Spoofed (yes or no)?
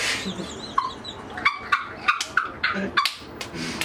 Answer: no